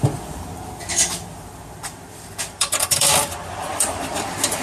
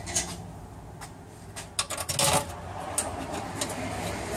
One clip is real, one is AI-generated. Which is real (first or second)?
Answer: second